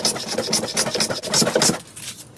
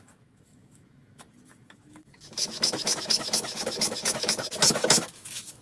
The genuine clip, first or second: first